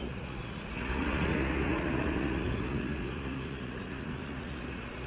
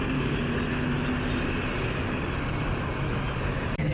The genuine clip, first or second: second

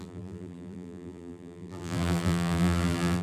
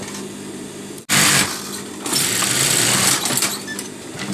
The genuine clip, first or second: second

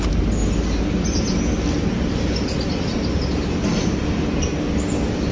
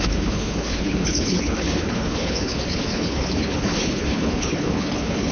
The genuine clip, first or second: first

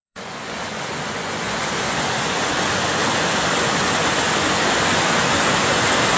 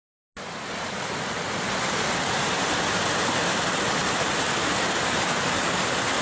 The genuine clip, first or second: second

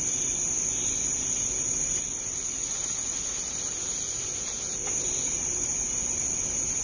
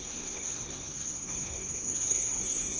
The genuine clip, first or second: first